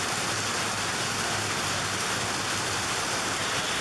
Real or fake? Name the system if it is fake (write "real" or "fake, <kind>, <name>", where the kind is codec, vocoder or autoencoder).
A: real